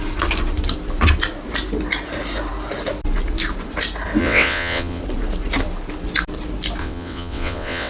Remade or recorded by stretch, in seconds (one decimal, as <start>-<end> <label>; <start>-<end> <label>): 0.0-4.2 recorded; 4.2-5.0 remade; 5.0-6.8 recorded; 6.8-7.9 remade